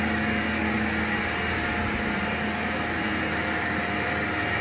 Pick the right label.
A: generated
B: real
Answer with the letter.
B